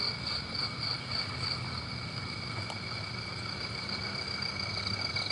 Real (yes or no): yes